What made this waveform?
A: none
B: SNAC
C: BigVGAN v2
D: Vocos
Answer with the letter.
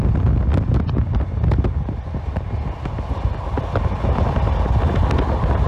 A